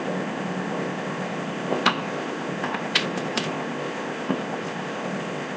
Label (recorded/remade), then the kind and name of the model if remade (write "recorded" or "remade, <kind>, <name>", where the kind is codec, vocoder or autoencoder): remade, codec, ZipCodec